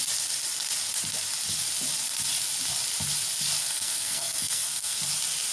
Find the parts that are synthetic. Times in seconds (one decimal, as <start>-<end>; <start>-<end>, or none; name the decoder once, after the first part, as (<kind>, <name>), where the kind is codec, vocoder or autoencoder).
3.6-5.0 (codec, SNAC)